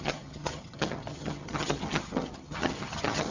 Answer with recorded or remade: remade